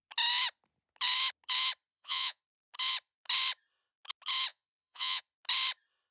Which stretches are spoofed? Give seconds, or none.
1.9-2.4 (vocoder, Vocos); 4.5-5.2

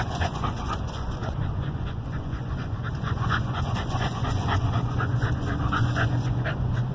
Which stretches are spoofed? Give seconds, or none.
0.0-6.9 (vocoder, Vocos)

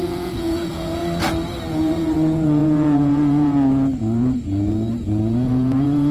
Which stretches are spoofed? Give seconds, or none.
0.0-1.0 (vocoder, Vocos); 1.7-6.1

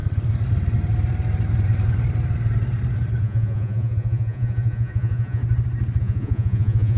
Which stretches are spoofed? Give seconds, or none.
3.2-5.4 (vocoder, Vocos); 6.0-7.0